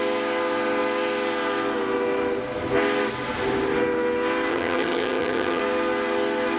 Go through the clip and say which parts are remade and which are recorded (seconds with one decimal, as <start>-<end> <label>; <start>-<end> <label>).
0.0-4.5 recorded; 4.5-5.6 remade; 5.6-6.6 recorded